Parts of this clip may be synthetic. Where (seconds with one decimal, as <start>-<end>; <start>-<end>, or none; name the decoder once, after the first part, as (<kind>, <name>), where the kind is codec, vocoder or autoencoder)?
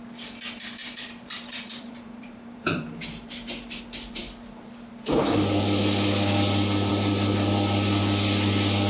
0.8-3.8 (vocoder, BigVGAN v2)